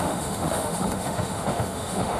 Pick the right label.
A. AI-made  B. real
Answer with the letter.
A